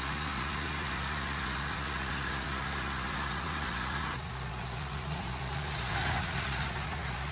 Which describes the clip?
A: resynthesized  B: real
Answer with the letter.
A